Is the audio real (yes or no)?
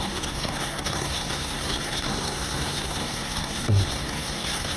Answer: no